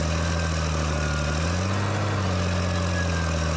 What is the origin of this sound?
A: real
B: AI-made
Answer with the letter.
A